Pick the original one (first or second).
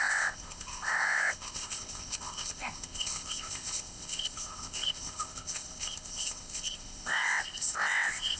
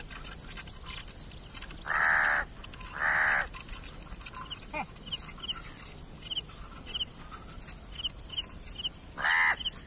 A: second